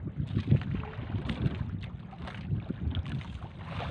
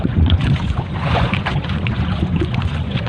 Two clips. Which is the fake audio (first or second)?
second